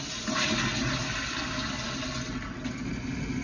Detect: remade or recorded recorded